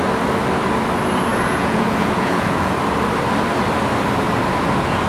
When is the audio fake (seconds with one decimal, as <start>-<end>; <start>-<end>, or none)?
1.3-2.7